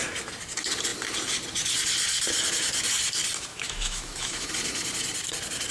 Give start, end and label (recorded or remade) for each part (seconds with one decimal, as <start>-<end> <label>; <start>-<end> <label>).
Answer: 0.0-3.5 recorded; 3.5-4.5 remade; 4.5-5.7 recorded